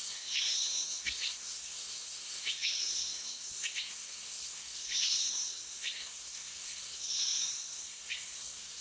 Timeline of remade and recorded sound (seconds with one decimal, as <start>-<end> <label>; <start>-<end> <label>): 0.0-8.8 remade